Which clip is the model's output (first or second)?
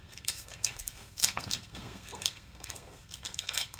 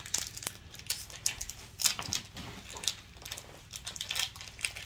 first